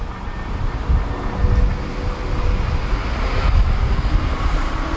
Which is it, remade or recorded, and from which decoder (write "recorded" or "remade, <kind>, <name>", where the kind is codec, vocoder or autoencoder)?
recorded